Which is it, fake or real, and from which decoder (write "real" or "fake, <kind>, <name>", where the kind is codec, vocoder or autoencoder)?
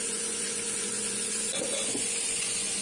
fake, vocoder, Vocos